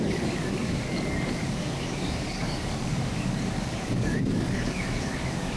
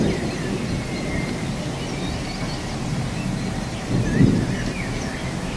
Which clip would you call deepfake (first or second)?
first